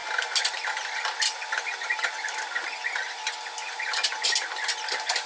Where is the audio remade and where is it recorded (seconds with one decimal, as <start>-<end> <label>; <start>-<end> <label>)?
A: 0.0-5.3 recorded